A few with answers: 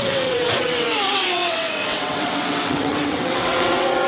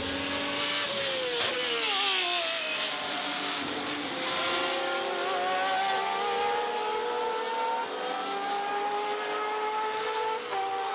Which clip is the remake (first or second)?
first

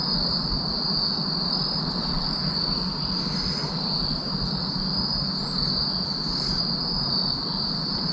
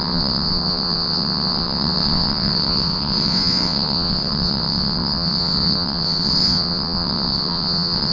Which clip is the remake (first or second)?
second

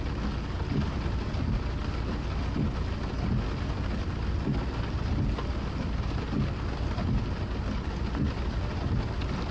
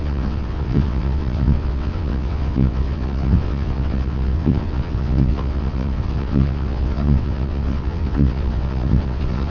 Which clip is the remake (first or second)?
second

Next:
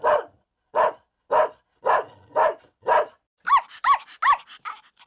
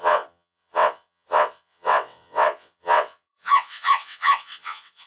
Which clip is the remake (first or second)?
second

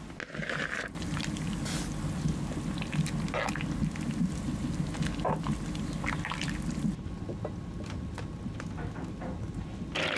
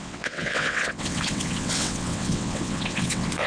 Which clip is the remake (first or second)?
second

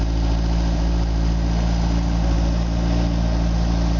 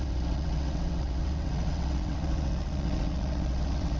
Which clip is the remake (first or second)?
second